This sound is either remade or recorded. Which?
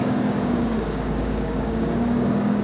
remade